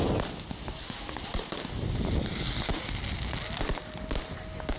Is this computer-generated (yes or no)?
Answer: no